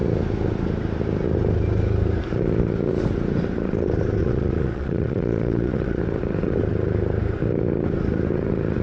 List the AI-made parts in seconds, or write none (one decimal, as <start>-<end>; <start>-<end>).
4.2-6.0